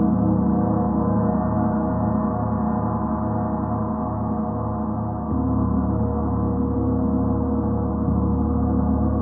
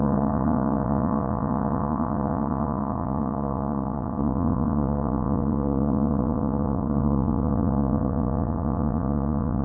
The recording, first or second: first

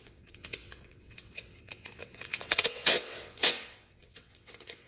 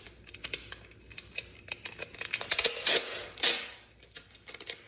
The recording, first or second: second